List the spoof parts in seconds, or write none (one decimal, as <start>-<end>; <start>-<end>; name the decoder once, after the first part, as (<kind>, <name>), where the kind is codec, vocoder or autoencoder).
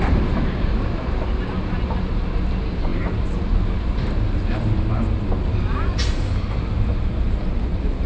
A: none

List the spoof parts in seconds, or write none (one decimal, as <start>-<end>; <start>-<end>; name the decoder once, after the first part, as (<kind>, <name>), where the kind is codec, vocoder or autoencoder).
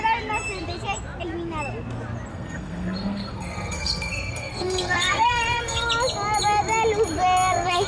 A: 2.3-5.9 (codec, SNAC)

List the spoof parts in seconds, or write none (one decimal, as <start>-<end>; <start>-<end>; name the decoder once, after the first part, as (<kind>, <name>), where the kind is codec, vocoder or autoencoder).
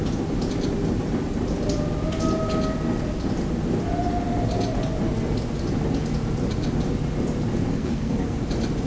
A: 7.7-8.4 (codec, SNAC)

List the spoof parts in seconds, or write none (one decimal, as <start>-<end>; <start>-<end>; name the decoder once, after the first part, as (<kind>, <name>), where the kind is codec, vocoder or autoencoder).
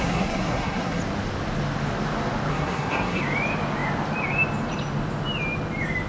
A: 0.0-1.0 (codec, SNAC); 2.5-3.2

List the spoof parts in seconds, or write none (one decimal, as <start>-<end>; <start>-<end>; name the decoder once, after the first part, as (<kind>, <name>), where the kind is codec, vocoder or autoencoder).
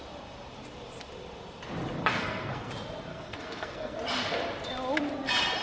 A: 2.1-2.7 (codec, SNAC); 3.1-4.0